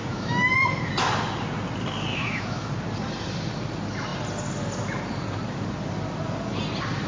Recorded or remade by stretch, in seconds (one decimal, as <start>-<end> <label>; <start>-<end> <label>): 0.0-0.9 remade; 0.9-2.1 recorded; 2.1-2.7 remade; 2.7-7.1 recorded

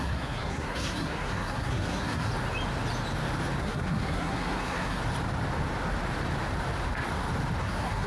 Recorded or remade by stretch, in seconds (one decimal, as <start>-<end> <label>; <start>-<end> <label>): 0.0-2.3 remade; 2.3-3.6 recorded; 3.6-5.0 remade; 5.0-7.6 recorded; 7.6-8.1 remade

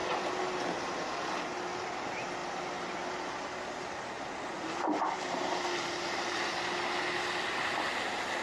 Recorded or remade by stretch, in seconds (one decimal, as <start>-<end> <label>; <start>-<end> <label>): 0.0-8.4 recorded

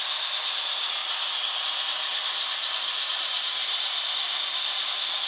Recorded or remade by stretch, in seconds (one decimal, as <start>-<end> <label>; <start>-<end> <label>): 0.0-1.0 remade; 1.0-1.6 recorded; 1.6-2.1 remade; 2.1-3.2 recorded; 3.2-3.6 remade; 3.6-4.6 recorded; 4.6-5.3 remade

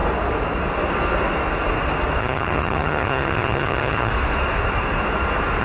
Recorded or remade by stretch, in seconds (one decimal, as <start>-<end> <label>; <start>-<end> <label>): 0.0-2.2 recorded; 2.2-4.1 remade; 4.1-5.6 recorded

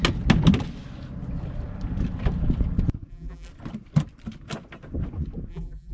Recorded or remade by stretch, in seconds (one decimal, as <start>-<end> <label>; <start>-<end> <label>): 0.0-3.1 recorded; 3.1-3.5 remade; 3.5-5.5 recorded; 5.5-5.9 remade

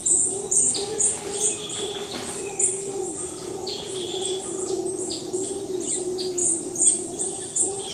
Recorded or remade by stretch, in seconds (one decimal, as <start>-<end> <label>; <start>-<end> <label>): 0.0-0.7 remade; 0.7-2.9 recorded; 2.9-5.5 remade; 5.5-7.9 recorded

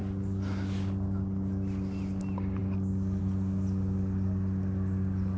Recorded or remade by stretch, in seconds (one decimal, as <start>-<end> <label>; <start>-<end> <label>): 0.0-5.4 recorded